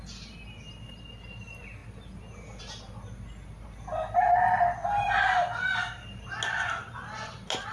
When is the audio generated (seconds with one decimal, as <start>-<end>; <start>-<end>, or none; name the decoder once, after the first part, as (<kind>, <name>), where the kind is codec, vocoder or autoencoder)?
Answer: none